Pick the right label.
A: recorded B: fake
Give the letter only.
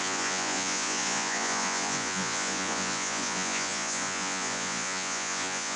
B